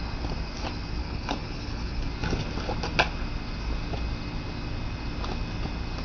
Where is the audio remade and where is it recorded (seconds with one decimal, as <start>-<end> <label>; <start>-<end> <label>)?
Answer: 0.0-1.0 recorded; 1.0-2.1 remade; 2.1-6.0 recorded